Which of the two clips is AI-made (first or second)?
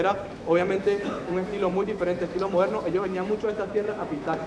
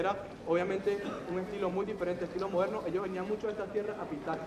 first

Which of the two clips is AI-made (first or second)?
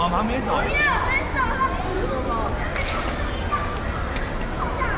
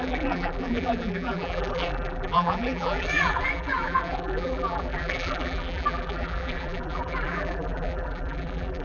second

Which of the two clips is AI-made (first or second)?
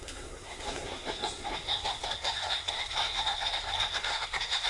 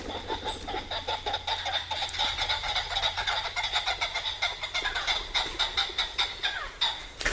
first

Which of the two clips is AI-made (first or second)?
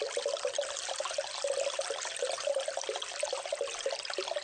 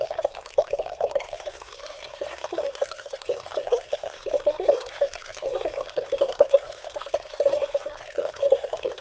second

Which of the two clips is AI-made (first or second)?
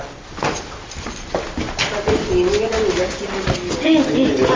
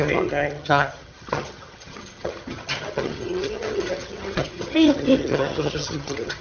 second